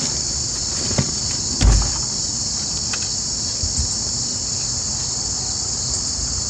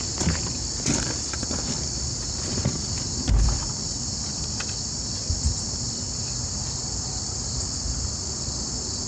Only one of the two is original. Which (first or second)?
first